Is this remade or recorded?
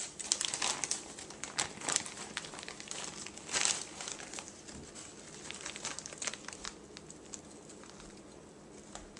recorded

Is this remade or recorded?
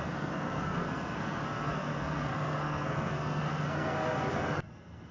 remade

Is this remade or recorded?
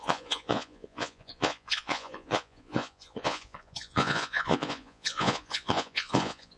remade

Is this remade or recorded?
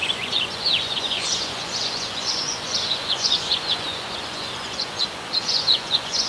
remade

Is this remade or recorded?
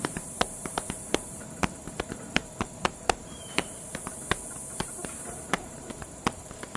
remade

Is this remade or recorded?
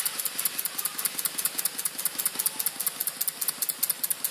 recorded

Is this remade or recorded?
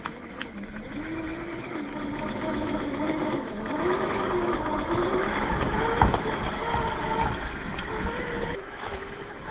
remade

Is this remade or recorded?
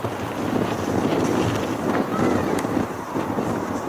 recorded